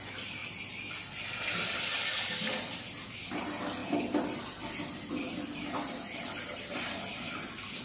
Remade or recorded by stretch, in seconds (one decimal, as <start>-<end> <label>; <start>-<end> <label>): 0.0-7.8 recorded